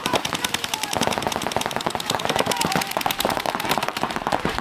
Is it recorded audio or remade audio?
remade